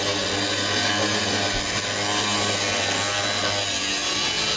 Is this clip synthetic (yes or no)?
no